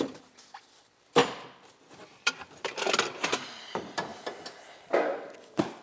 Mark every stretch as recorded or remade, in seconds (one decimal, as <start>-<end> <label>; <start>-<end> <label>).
0.0-1.2 remade; 1.2-1.9 recorded; 1.9-4.1 remade; 4.1-5.8 recorded